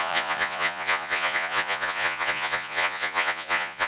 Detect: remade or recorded remade